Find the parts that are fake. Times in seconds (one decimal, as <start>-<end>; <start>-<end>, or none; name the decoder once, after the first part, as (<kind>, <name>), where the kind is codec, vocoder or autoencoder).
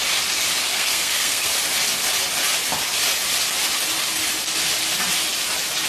0.7-1.5 (codec, SNAC)